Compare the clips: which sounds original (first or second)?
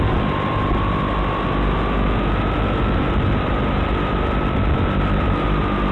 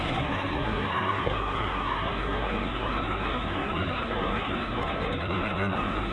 first